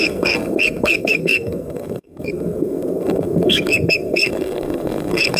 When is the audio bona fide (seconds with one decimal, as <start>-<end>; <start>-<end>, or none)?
none